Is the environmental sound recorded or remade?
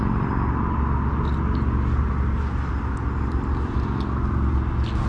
recorded